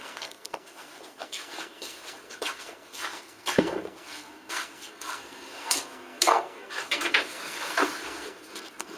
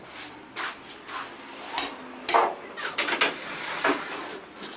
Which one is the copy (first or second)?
first